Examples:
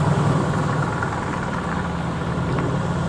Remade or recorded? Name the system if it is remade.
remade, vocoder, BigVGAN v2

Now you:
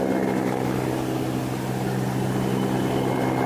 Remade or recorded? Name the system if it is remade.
recorded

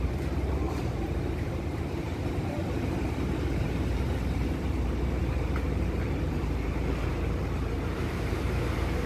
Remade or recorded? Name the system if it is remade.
remade, vocoder, BigVGAN v2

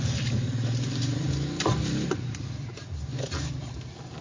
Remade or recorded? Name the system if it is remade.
remade, vocoder, BigVGAN v2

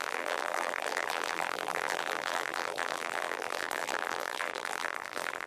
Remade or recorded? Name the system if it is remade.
remade, vocoder, BigVGAN v2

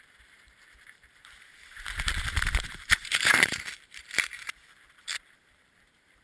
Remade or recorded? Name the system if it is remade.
remade, vocoder, BigVGAN v2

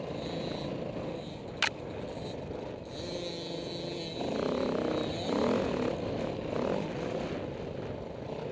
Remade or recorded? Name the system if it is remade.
recorded